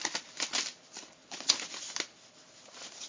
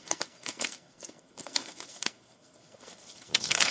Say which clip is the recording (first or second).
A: first